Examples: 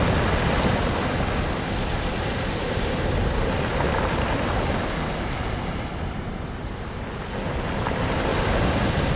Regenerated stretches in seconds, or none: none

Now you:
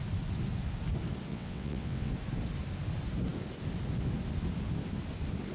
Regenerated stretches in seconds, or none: 1.3-2.1 (vocoder, WaveNeXt)

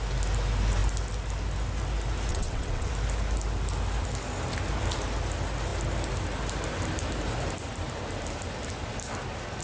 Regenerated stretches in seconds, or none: 2.3-2.9 (vocoder, WaveNeXt)

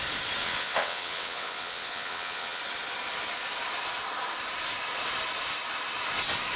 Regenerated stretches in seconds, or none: 0.4-2.6 (vocoder, WaveNeXt)

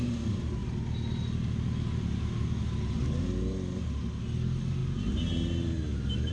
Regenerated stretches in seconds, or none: none

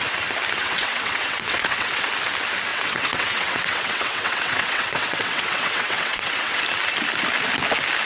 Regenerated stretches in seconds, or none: 0.6-2.1 (vocoder, WaveNeXt); 2.7-6.6

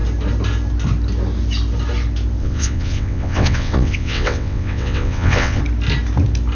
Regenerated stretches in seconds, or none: 2.4-5.6 (vocoder, WaveNeXt)